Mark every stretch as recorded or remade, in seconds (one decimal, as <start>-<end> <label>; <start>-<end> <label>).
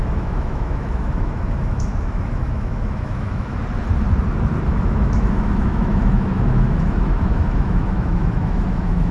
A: 0.0-3.6 remade; 3.6-4.7 recorded; 4.7-9.1 remade